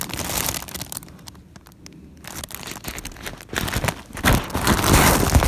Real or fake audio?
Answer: real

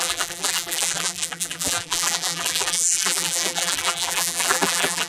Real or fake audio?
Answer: fake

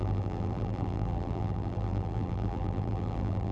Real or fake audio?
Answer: fake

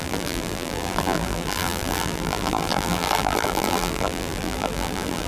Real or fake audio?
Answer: fake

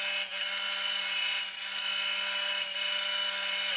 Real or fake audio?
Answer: real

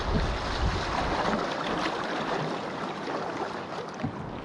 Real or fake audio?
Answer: real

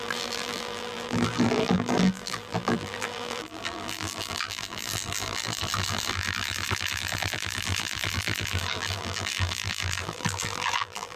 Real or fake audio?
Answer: fake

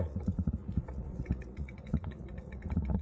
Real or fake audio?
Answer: fake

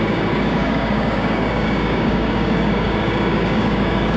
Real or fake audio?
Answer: fake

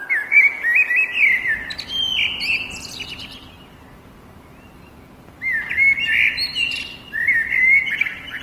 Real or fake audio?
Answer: real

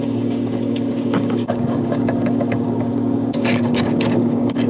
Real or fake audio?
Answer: fake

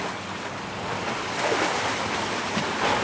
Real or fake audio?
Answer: real